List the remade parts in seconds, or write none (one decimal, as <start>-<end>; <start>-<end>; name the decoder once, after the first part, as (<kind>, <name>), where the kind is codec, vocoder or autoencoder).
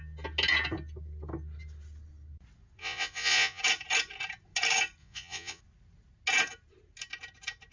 2.8-3.6 (vocoder, Vocos); 5.0-5.6